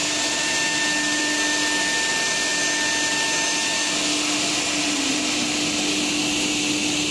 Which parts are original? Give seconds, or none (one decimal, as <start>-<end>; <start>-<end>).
0.0-7.1